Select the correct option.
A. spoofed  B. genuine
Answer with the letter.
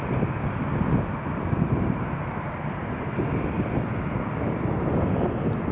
B